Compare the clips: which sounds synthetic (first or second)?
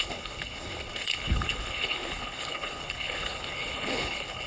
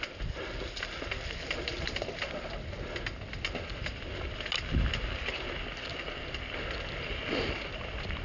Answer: first